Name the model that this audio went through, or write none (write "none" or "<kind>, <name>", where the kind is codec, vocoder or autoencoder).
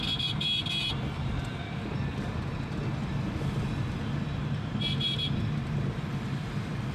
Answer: none